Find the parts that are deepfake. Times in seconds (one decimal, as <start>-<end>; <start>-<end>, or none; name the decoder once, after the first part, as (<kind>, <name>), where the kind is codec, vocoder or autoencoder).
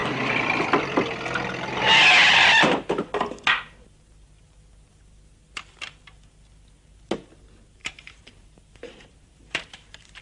7.8-10.2 (vocoder, BigVGAN v2)